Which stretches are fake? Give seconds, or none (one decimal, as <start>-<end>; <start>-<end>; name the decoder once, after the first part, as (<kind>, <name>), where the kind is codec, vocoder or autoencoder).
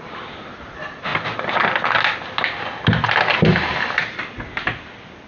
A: none